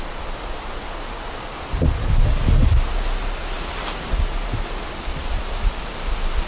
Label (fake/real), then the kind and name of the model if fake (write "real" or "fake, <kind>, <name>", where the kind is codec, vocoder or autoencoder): real